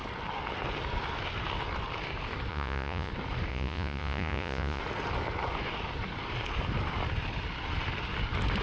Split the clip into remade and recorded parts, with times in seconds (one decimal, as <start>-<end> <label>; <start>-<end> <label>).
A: 0.0-2.5 recorded; 2.5-3.1 remade; 3.1-3.5 recorded; 3.5-4.8 remade; 4.8-8.6 recorded